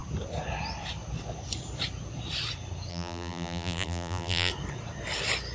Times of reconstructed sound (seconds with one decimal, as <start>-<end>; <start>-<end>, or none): 2.9-4.5